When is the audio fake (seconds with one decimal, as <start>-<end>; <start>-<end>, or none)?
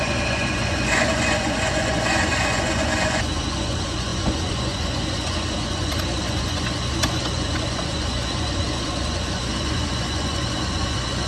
0.0-11.3